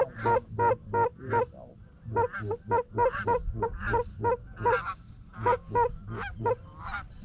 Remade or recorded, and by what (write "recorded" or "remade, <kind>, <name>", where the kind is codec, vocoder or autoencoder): recorded